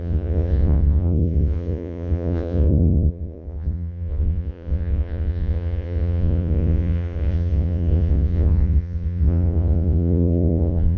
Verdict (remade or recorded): remade